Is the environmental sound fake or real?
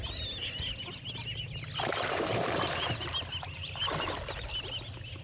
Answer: real